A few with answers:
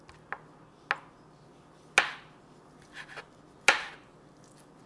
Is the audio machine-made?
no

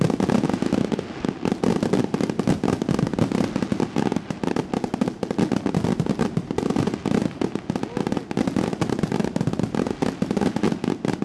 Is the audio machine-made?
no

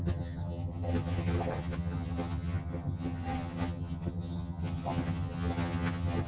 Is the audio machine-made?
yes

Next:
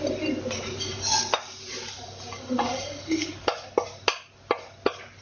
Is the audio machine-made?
no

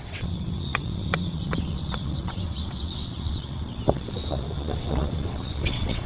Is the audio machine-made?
yes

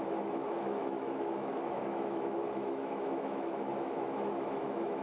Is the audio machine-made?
yes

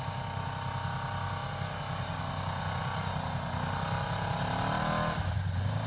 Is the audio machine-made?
no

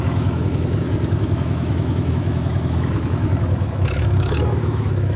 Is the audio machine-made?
yes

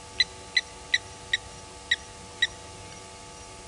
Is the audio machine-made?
no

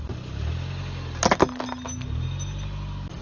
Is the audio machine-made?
no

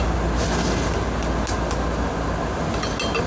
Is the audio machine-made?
no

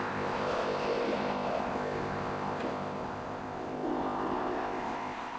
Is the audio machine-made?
yes